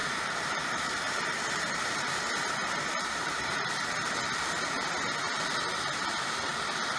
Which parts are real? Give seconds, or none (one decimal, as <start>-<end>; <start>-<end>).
4.2-5.7; 6.5-7.0